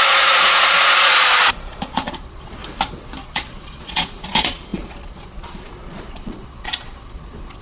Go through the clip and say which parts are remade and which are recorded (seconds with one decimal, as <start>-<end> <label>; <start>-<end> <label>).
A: 0.0-2.6 remade; 2.6-3.2 recorded; 3.2-7.6 remade